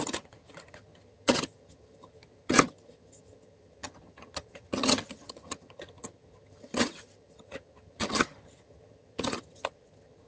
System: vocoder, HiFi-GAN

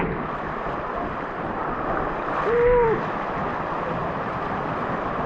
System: none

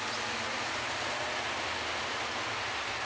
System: none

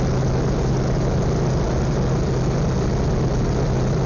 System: none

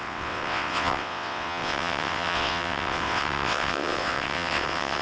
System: vocoder, WaveNeXt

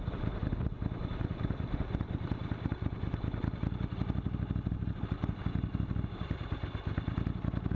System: none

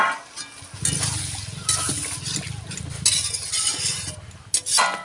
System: none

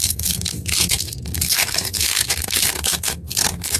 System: codec, SNAC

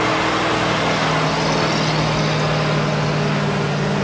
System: none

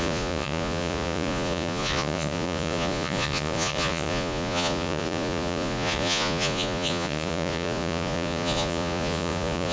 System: vocoder, Vocos